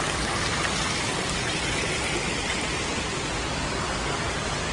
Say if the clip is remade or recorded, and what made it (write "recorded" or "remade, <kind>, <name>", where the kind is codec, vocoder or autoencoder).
recorded